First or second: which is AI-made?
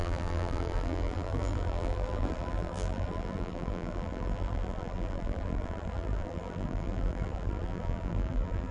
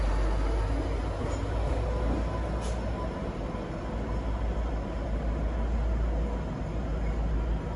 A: first